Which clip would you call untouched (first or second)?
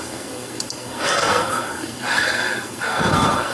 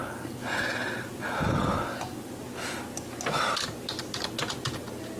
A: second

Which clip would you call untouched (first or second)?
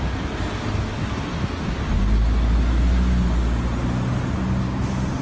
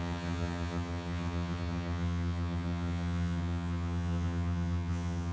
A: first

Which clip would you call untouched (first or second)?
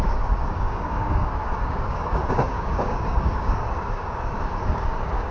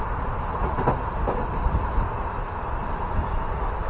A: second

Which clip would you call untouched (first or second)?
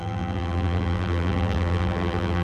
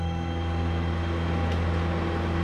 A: second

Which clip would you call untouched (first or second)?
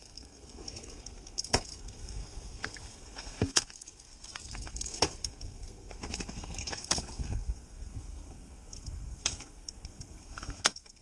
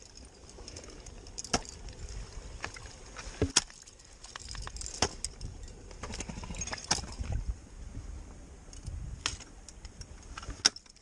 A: second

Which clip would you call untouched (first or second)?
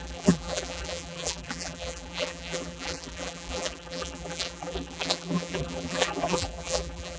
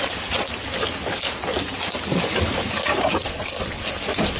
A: second